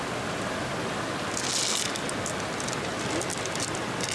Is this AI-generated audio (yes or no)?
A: no